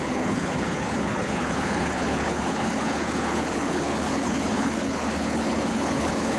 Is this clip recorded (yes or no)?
no